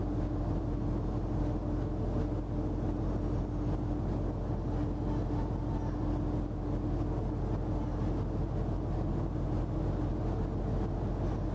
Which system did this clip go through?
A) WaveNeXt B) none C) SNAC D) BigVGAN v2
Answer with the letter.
B